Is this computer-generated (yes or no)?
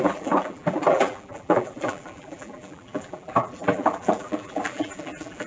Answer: yes